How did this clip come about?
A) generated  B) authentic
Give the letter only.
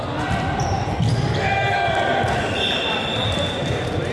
B